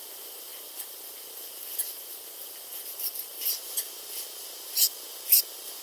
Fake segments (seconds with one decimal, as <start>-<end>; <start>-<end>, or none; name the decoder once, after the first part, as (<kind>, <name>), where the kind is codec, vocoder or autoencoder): none

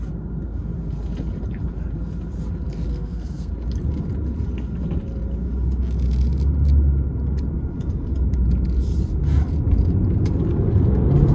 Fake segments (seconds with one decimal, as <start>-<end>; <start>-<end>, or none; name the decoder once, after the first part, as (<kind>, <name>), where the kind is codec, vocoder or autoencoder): 2.9-3.5 (codec, SNAC)

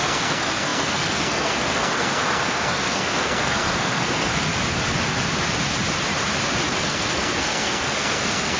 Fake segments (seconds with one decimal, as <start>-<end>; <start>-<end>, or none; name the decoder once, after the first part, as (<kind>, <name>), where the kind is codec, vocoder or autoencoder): 0.0-4.5 (codec, SNAC); 6.8-8.6

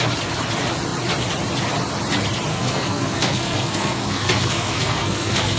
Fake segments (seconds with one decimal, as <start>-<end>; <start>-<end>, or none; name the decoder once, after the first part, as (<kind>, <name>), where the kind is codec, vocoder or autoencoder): 2.5-5.6 (codec, SNAC)